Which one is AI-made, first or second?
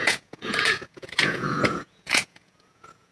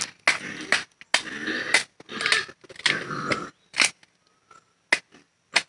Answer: first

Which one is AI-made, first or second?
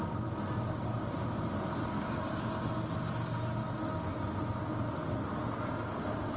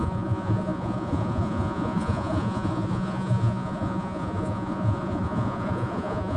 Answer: second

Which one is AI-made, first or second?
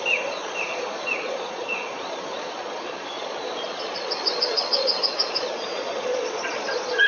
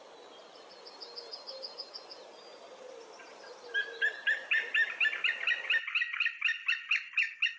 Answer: first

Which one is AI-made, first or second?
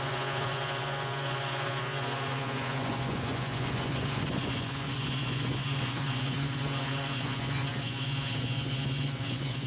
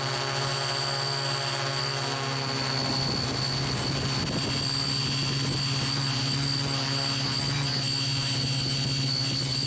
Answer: first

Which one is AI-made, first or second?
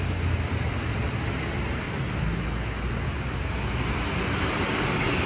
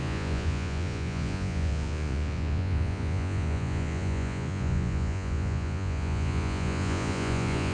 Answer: second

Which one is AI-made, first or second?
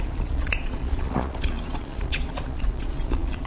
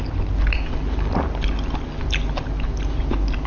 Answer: first